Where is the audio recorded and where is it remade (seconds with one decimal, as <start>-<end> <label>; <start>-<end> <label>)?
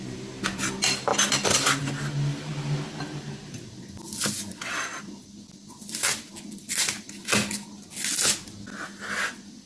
0.0-9.7 recorded